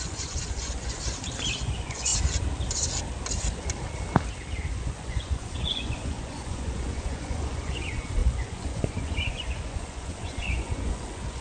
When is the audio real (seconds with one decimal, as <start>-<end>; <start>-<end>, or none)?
1.0-1.6; 2.1-4.7

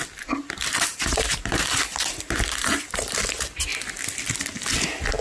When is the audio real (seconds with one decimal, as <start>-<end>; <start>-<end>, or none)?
0.0-0.9; 3.2-5.2